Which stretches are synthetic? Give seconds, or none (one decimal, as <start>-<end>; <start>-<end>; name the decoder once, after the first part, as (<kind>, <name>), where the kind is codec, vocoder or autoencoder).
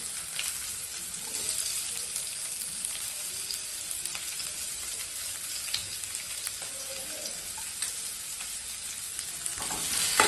none